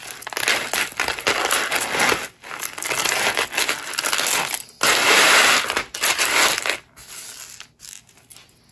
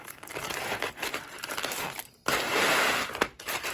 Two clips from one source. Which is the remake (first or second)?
second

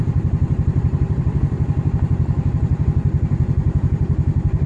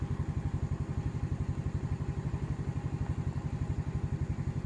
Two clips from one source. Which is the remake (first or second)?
first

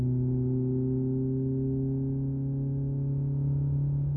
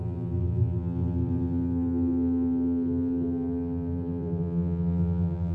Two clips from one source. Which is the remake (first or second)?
second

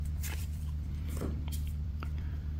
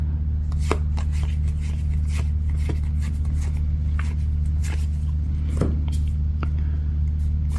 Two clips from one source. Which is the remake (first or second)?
first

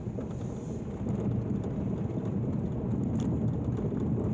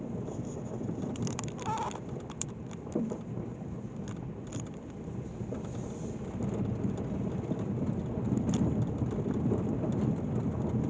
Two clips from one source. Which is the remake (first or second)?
second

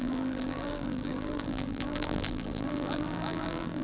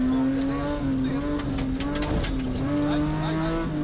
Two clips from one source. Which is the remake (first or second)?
first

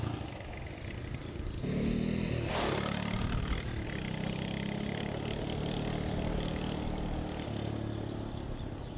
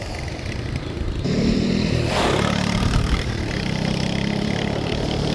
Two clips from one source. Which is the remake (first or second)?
second